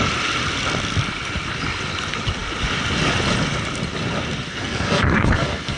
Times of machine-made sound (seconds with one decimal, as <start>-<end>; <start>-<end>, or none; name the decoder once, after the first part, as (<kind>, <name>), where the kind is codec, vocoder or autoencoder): 4.5-5.8 (codec, SNAC)

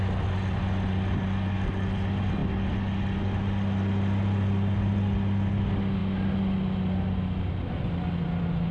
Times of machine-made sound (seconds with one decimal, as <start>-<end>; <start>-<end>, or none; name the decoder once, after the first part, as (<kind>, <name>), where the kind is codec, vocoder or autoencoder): none

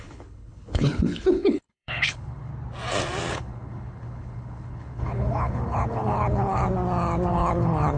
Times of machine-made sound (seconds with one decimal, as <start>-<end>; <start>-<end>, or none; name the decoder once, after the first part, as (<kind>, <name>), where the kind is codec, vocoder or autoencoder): 0.0-2.5 (codec, HILCodec); 3.3-6.6; 7.3-8.0

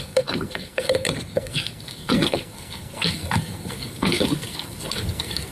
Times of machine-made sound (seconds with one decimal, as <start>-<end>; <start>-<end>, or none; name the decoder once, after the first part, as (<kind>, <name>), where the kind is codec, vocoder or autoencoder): 0.0-5.5 (codec, SNAC)

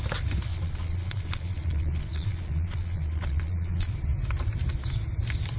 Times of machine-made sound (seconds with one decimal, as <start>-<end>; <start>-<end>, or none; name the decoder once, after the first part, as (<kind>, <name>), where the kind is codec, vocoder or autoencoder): 0.5-3.9 (vocoder, Vocos)

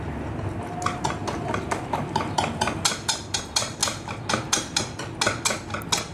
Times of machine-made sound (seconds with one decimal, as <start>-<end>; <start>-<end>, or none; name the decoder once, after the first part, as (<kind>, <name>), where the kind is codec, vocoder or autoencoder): none